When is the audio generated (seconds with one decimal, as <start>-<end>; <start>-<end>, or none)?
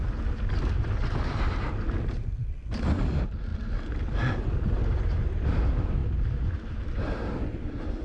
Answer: none